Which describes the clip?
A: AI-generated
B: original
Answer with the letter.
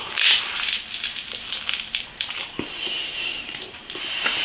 A